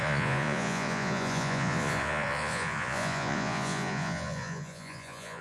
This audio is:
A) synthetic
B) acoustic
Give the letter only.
A